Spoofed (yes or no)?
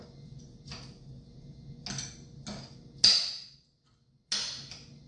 no